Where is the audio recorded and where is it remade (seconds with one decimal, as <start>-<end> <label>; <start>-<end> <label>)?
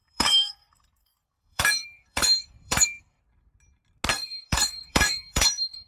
0.0-3.2 remade; 3.2-4.1 recorded; 4.1-5.9 remade